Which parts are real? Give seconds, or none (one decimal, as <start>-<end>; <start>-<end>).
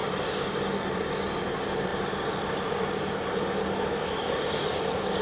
0.0-5.2